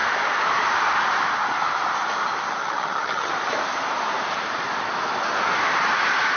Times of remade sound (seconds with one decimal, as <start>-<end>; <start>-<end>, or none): 2.6-3.3